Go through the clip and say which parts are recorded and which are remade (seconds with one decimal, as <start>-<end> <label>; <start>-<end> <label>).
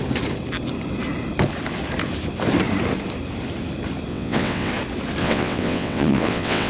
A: 0.0-4.1 recorded; 4.1-4.7 remade; 4.7-5.2 recorded; 5.2-6.7 remade